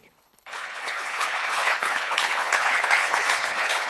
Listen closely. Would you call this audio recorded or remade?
remade